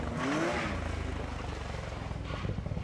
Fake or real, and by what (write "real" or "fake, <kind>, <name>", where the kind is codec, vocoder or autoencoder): real